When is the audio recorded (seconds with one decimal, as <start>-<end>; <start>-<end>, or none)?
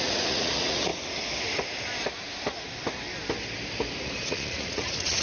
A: 0.9-4.0